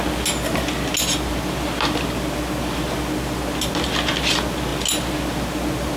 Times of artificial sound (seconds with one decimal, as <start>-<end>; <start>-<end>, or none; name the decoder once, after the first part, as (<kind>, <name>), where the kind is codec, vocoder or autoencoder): none